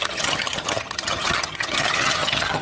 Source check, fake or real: fake